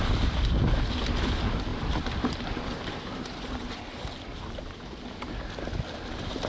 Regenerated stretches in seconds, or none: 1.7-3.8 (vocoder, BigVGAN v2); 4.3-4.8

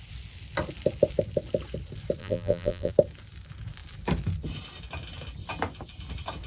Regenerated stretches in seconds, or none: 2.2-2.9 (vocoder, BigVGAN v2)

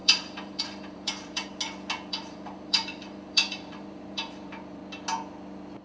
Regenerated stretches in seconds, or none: 0.0-1.5 (vocoder, BigVGAN v2); 2.1-4.8